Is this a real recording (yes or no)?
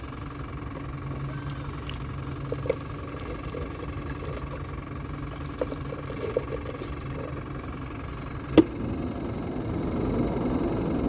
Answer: yes